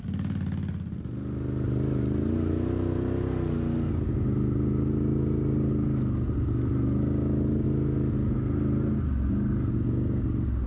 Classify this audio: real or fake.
real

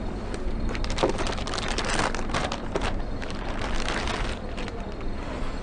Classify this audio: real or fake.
real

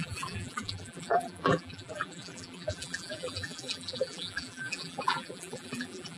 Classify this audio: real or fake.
fake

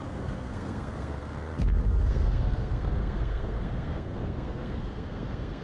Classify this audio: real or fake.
fake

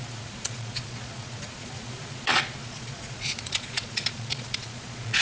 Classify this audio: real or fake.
fake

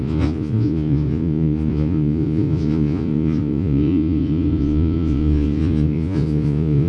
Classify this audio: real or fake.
fake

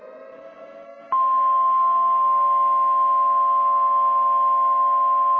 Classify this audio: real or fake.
real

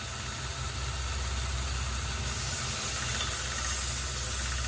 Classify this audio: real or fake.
real